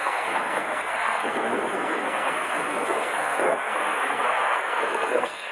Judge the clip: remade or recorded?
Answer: remade